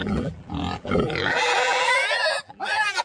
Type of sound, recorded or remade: remade